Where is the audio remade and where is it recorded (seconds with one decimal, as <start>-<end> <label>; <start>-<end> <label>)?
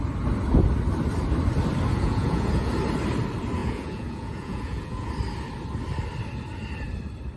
0.0-1.9 recorded; 1.9-2.7 remade; 2.7-3.6 recorded; 3.6-5.1 remade; 5.1-7.4 recorded